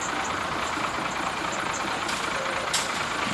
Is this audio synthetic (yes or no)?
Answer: no